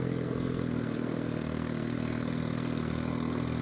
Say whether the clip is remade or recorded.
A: remade